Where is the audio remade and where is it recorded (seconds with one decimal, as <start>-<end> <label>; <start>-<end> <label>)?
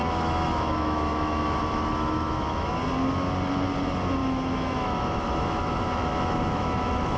0.0-2.7 remade; 2.7-4.2 recorded; 4.2-7.2 remade